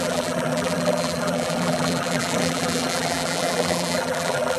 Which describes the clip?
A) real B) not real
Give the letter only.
B